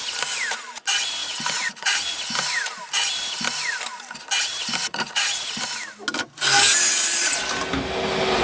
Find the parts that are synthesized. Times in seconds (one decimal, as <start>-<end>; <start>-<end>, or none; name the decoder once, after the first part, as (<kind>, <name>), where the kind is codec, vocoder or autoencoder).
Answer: 1.2-2.2 (vocoder, Vocos); 4.8-5.6